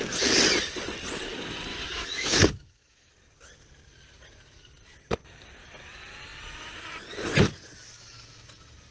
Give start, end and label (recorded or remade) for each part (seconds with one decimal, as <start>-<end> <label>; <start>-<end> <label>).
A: 0.0-1.7 recorded; 1.7-3.1 remade; 3.1-8.9 recorded